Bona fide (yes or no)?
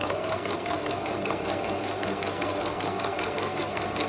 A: no